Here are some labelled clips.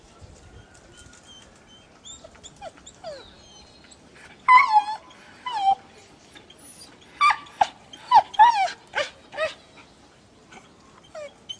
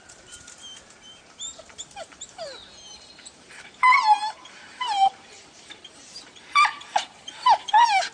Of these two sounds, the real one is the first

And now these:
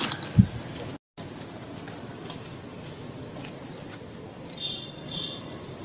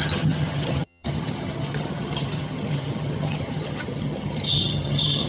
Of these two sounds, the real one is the first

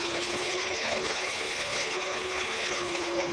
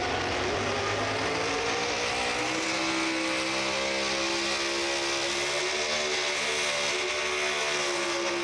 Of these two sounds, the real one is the second